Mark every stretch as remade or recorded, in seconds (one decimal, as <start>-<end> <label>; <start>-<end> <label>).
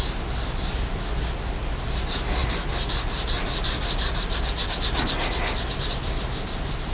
0.0-6.9 recorded